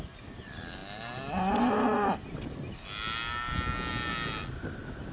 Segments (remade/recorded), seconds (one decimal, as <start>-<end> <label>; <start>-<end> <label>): 0.0-5.1 recorded